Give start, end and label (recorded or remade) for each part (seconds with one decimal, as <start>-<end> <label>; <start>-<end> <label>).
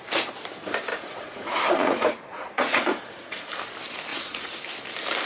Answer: 0.0-0.9 recorded; 0.9-3.4 remade; 3.4-4.1 recorded; 4.1-4.6 remade; 4.6-5.3 recorded